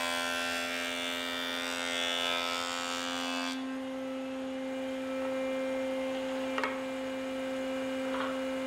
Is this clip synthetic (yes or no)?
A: no